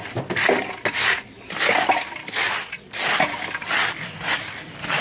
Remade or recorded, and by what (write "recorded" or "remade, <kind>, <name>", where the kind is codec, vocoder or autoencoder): recorded